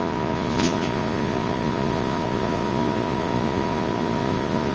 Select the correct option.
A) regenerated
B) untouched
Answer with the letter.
A